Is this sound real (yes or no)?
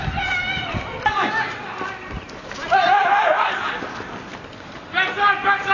yes